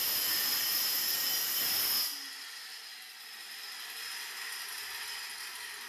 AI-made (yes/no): no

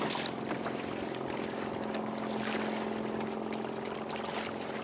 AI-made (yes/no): no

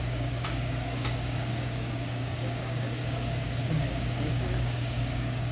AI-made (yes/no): yes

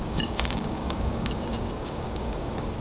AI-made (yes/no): yes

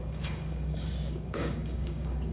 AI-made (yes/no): yes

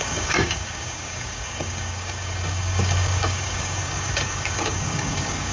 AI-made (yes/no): yes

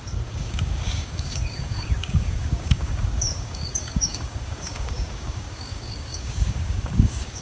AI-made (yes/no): yes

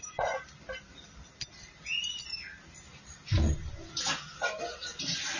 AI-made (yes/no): no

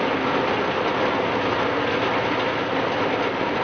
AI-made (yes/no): no